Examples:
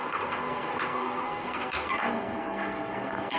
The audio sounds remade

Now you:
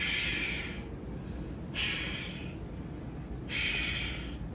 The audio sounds recorded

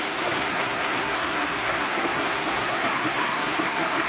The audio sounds remade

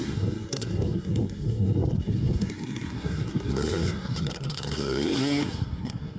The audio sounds remade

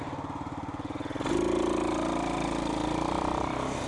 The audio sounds recorded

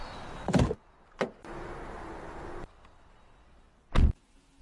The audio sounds recorded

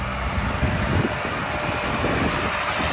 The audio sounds recorded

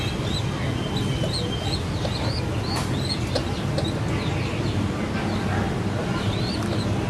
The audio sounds recorded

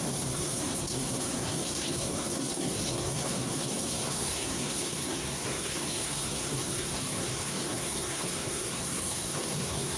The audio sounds remade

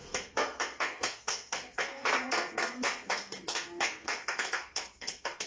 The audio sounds remade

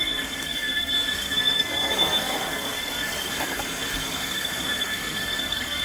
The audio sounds remade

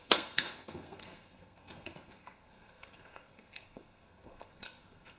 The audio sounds remade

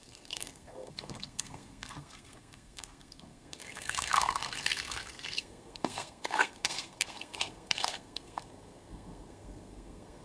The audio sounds remade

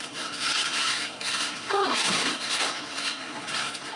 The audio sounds remade